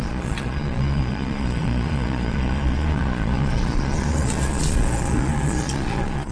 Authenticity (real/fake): fake